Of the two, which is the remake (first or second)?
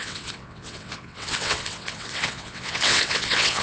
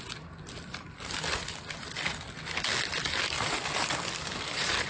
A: first